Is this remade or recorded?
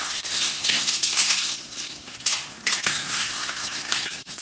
remade